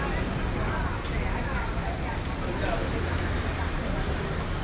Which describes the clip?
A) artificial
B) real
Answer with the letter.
B